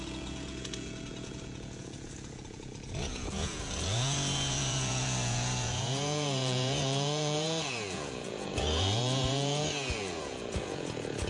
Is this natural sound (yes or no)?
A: no